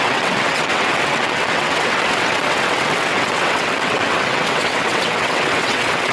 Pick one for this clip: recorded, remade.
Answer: remade